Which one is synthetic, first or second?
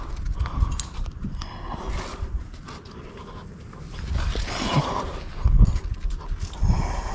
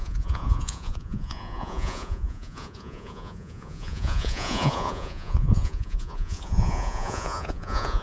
second